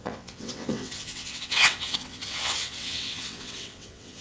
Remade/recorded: remade